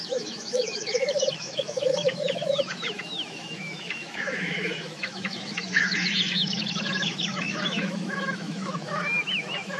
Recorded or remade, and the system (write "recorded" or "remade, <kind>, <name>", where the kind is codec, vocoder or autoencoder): remade, autoencoder, DAC-VAE